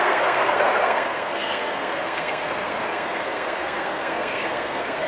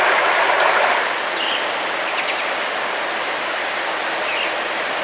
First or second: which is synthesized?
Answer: first